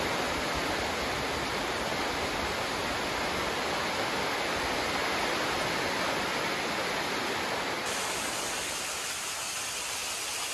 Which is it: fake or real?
real